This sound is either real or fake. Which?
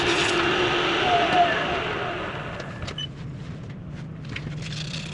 real